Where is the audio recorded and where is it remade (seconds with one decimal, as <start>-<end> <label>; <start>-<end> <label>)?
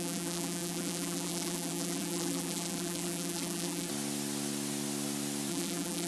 0.0-3.9 remade; 3.9-5.5 recorded; 5.5-6.1 remade